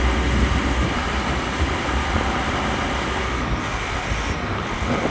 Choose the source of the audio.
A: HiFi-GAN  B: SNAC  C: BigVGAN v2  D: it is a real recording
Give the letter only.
D